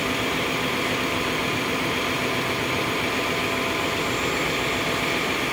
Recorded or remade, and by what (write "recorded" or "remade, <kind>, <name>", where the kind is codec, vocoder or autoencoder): recorded